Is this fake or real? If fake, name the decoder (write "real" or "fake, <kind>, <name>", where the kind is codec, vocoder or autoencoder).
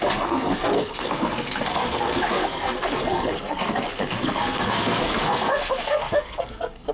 fake, codec, SNAC